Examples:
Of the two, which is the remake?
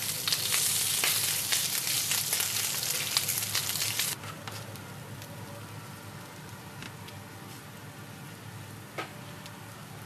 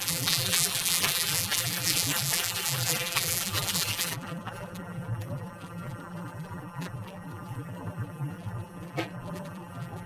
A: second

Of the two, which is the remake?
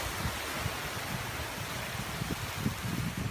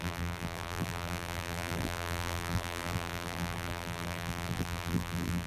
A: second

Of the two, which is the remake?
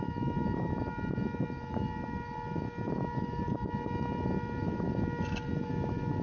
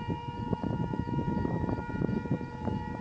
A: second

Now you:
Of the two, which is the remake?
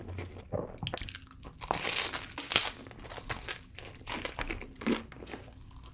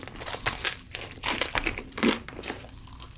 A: second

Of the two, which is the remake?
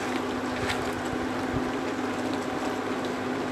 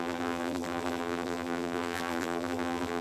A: second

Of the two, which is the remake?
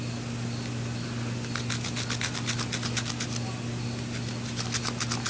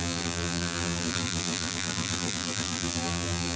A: second